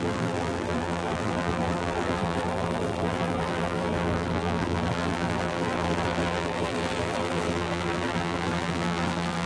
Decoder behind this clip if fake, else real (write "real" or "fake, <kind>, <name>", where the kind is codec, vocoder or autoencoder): fake, vocoder, BigVGAN v2